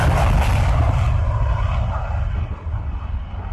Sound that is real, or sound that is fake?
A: real